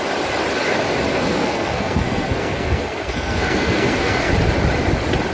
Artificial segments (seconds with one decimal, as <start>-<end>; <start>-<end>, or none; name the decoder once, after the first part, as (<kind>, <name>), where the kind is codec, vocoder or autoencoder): 1.1-4.3 (codec, SNAC)